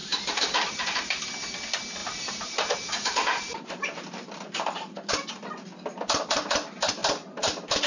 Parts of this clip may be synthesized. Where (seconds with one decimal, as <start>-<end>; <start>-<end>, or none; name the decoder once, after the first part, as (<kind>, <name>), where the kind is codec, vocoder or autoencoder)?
0.0-1.2 (vocoder, BigVGAN v2); 2.0-5.1; 7.0-7.9